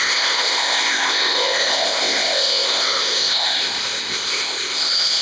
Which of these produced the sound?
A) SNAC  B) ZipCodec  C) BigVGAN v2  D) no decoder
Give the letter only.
B